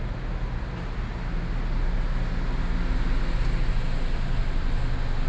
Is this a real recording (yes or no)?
yes